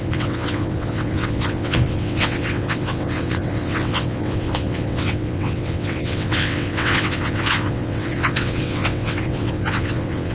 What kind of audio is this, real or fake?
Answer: fake